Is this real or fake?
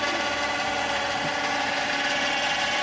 real